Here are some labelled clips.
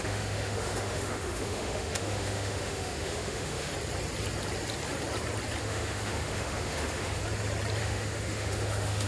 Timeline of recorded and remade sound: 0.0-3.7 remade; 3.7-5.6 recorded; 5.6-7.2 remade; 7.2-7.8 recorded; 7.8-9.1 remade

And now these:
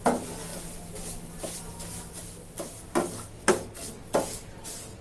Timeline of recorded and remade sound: 0.0-5.0 recorded